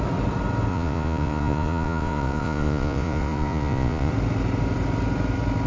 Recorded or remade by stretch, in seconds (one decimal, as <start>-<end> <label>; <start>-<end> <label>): 0.0-0.7 recorded; 0.7-4.1 remade; 4.1-5.7 recorded